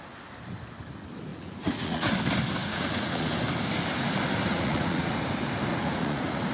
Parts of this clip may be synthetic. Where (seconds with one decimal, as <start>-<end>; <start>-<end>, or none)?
1.3-2.1; 2.6-3.3; 4.5-5.1; 5.7-6.5